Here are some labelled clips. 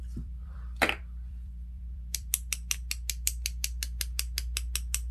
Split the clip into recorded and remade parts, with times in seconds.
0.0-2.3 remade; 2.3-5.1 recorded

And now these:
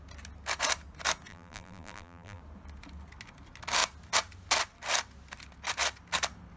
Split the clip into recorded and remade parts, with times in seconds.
0.0-1.3 recorded; 1.3-2.4 remade; 2.4-6.6 recorded

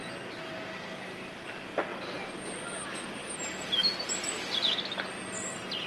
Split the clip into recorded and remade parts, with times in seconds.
0.0-5.9 recorded

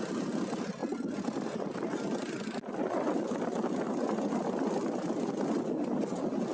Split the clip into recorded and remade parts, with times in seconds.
0.0-6.5 recorded

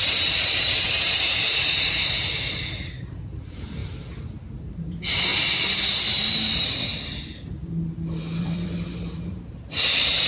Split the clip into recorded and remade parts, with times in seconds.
0.0-3.8 remade; 3.8-4.6 recorded; 4.6-6.9 remade; 6.9-8.4 recorded; 8.4-10.3 remade

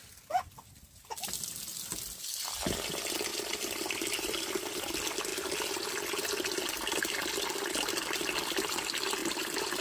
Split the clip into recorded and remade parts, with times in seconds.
0.0-3.3 recorded; 3.3-4.7 remade; 4.7-5.3 recorded; 5.3-5.9 remade; 5.9-9.8 recorded